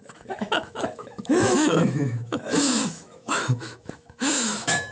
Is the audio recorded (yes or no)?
no